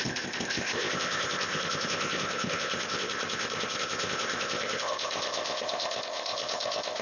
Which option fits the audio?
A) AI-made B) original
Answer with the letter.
A